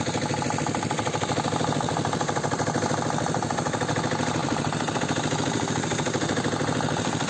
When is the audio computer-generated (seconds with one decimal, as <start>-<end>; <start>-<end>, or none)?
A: 4.4-5.0